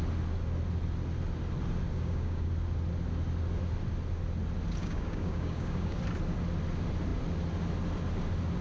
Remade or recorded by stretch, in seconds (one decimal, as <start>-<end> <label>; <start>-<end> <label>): 0.0-1.9 recorded; 1.9-2.5 remade; 2.5-4.8 recorded; 4.8-6.0 remade; 6.0-8.6 recorded